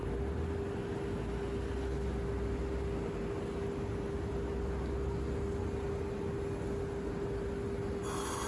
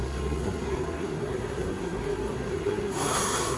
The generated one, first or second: second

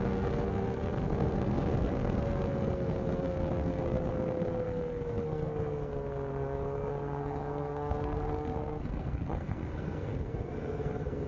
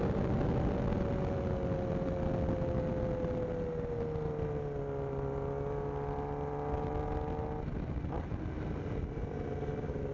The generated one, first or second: first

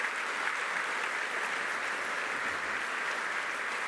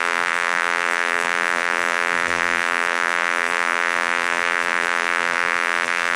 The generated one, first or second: second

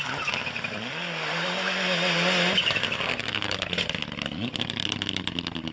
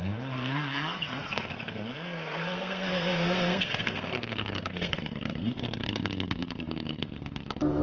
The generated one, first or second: second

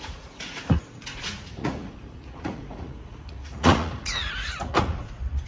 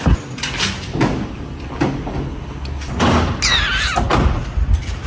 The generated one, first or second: first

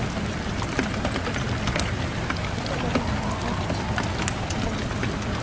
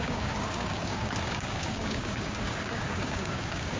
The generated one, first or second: second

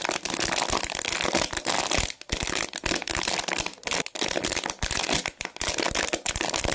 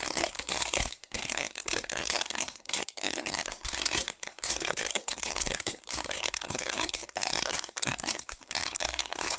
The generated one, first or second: second